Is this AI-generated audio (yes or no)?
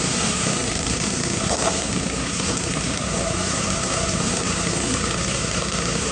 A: yes